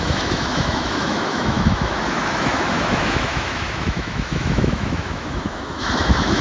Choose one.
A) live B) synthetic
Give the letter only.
B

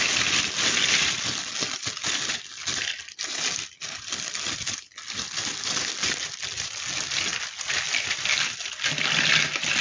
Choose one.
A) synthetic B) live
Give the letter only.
B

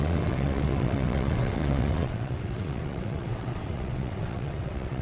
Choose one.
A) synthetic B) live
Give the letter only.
A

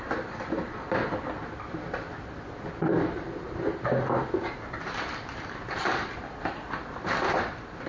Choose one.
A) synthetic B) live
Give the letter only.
A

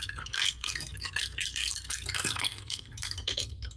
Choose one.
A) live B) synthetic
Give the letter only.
B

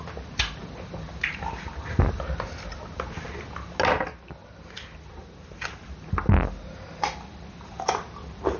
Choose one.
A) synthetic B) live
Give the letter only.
B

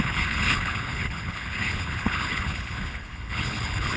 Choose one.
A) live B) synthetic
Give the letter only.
B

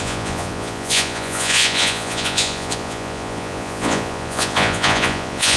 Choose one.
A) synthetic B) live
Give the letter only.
A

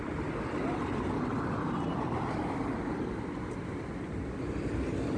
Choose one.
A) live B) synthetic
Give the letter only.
A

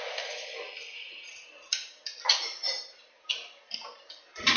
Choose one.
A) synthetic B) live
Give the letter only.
B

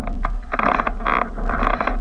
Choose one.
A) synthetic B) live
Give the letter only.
A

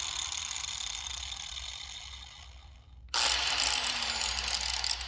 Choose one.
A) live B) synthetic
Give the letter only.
A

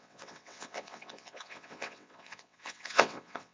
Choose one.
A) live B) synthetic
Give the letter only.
B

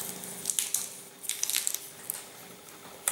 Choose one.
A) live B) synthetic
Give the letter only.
A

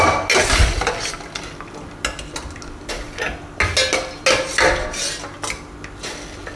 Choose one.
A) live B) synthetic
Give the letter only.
A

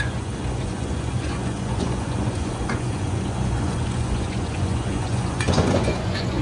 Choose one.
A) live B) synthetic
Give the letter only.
B